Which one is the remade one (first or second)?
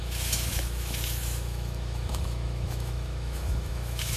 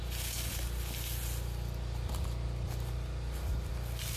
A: first